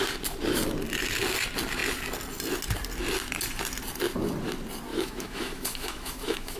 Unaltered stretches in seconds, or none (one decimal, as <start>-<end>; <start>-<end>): 0.0-4.9